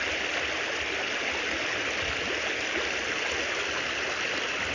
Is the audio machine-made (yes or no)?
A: no